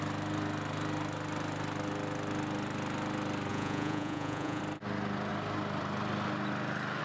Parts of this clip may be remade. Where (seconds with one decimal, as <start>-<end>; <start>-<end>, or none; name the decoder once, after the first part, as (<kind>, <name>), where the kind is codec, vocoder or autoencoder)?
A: 3.5-4.6 (vocoder, Vocos)